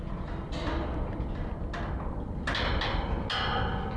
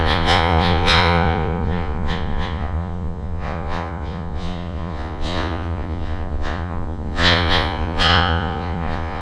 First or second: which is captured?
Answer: first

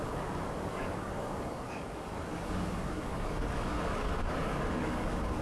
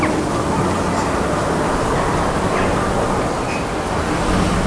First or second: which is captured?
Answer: second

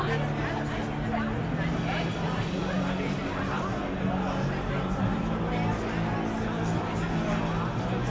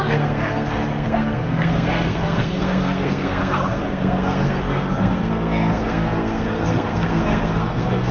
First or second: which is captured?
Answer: first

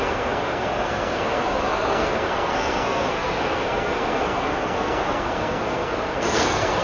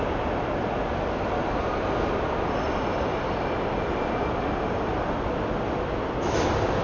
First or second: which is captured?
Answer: second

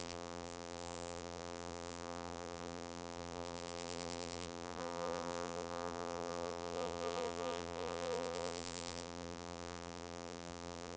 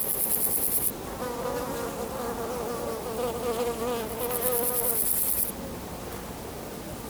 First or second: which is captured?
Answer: second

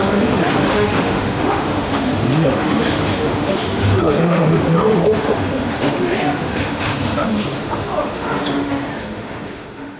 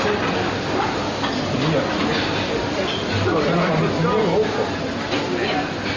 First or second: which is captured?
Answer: second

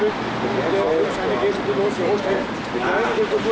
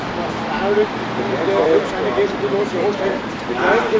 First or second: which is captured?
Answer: first